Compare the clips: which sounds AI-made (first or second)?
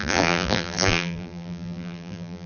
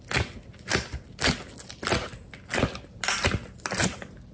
first